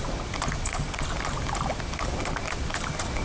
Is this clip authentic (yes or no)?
yes